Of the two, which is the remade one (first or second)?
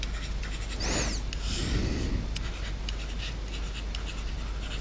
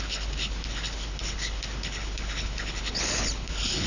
second